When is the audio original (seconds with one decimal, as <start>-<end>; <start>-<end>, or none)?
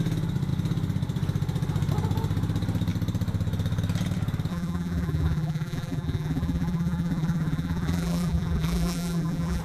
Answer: 0.0-4.5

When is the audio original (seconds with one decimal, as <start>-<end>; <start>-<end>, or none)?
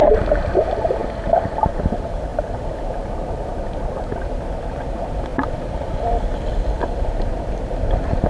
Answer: 1.0-1.8; 2.3-4.2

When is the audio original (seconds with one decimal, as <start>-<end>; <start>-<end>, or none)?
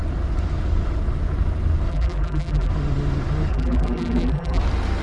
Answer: 0.0-1.9; 2.7-3.5; 4.6-5.0